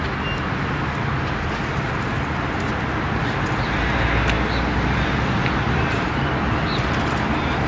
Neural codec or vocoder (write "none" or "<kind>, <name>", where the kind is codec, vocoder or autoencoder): none